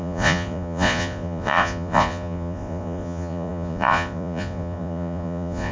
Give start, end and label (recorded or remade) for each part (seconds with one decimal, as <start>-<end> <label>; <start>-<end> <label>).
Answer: 0.0-5.7 remade

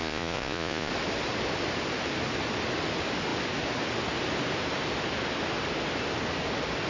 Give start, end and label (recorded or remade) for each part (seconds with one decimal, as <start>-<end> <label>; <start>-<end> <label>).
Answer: 0.0-0.9 remade; 0.9-6.9 recorded